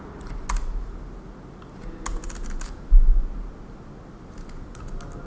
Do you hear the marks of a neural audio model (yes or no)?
no